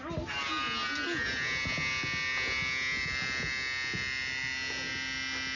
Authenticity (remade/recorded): recorded